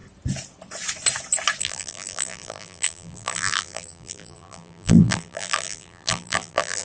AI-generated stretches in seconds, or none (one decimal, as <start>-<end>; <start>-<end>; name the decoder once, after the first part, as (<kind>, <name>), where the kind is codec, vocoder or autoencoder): 1.6-6.8 (vocoder, BigVGAN v2)